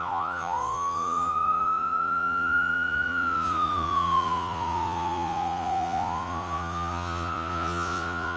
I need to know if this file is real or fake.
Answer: fake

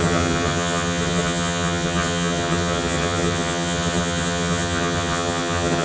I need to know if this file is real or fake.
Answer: fake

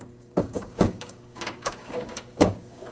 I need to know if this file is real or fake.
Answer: fake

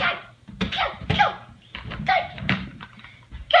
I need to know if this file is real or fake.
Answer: fake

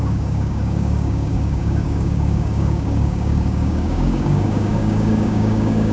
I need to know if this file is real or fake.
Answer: fake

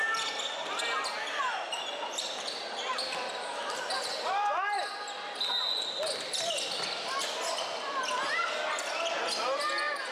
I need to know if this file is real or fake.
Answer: real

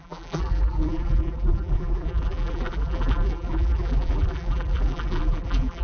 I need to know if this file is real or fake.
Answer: fake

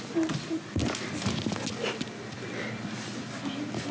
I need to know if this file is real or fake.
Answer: real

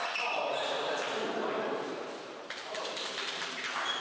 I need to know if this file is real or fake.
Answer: fake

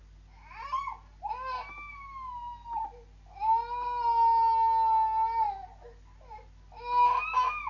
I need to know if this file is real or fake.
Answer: real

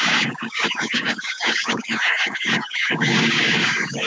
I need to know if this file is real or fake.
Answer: fake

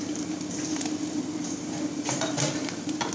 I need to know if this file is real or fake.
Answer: real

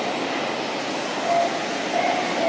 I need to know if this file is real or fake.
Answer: real